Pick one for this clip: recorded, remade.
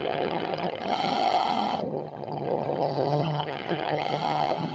remade